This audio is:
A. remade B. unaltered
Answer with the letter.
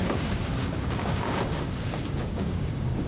A